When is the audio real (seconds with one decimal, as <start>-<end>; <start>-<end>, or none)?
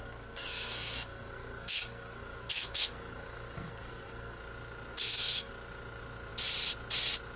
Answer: 4.4-4.9; 5.5-7.4